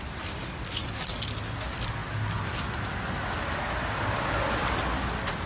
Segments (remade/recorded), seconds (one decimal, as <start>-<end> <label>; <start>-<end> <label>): 0.0-5.5 recorded